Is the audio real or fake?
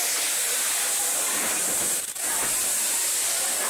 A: real